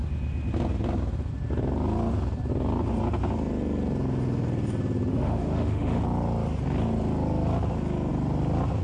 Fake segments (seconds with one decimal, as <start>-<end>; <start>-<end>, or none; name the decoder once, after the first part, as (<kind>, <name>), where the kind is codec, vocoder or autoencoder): 5.1-6.0 (autoencoder, DAC-VAE)